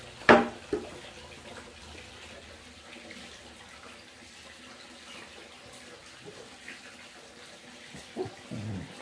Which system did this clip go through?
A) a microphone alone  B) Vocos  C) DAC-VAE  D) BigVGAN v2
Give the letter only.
A